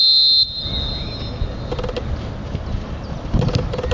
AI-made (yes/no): no